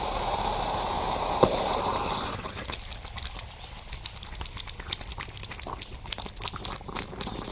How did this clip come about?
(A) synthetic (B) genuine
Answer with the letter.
B